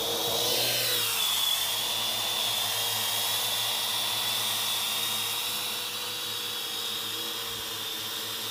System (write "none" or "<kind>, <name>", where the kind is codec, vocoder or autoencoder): none